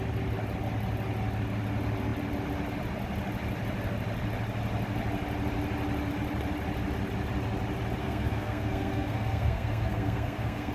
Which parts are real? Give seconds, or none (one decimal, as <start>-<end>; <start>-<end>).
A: 0.0-8.0